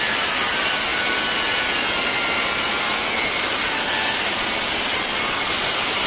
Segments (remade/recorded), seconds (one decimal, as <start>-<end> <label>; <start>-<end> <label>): 0.0-6.1 recorded